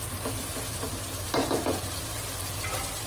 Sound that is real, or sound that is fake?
real